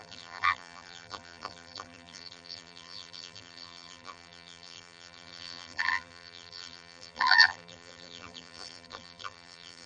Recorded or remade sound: remade